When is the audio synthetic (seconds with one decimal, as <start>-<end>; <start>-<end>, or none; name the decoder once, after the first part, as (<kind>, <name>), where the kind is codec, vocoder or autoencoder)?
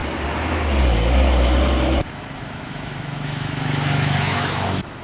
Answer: 2.0-5.0 (autoencoder, DAC-VAE)